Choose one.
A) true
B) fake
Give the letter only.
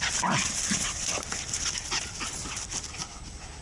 A